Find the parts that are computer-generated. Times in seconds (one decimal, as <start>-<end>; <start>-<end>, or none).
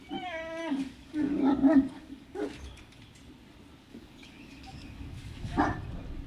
0.6-3.0; 3.9-5.6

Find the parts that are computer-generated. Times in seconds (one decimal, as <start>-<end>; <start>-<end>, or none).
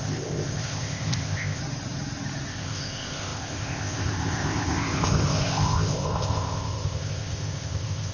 0.0-1.6; 2.5-8.1